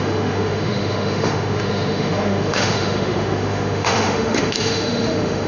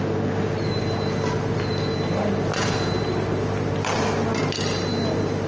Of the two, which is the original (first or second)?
second